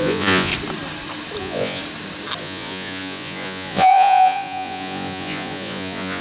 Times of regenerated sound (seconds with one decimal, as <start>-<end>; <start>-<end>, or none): 0.0-0.5; 1.4-1.8; 2.4-6.2